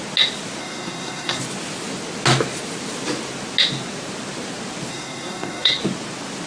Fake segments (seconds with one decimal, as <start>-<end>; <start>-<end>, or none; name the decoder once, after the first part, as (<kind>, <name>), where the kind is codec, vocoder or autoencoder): 0.6-1.4 (codec, SNAC); 4.9-5.8